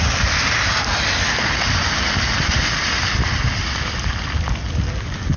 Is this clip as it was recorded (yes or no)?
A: yes